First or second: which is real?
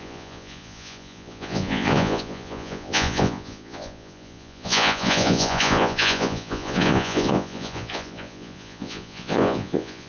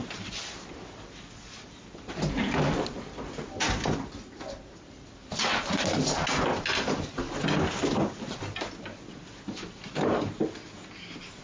second